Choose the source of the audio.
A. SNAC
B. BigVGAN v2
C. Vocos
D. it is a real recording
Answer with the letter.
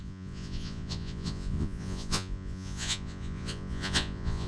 C